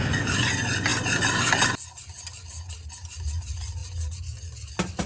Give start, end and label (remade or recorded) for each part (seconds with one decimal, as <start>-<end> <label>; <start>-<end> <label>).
0.0-5.1 recorded